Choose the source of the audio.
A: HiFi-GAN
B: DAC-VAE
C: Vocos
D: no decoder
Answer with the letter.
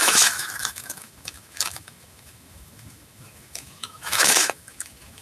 B